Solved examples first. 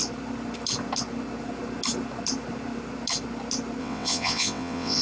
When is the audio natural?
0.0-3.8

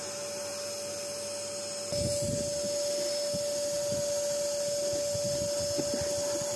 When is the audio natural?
0.0-6.6

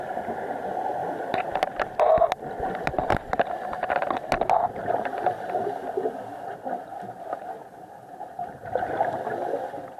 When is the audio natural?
0.0-10.0

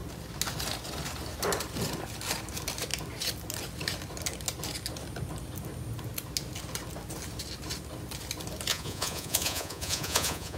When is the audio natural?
0.0-8.7

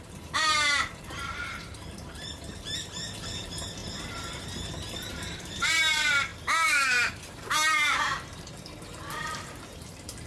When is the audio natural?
3.8-5.1

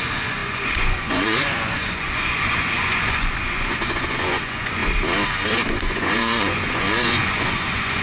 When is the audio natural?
4.8-5.7

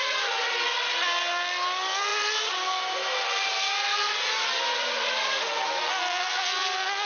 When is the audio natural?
0.0-7.1